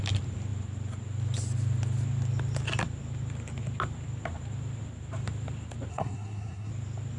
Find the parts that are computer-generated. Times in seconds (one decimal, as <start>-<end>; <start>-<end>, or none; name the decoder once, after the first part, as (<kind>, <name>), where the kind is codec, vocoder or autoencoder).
5.9-6.7 (codec, SNAC)